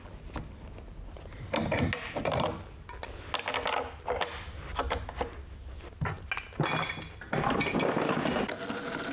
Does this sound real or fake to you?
real